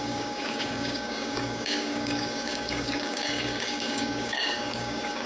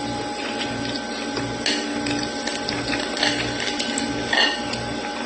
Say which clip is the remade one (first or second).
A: first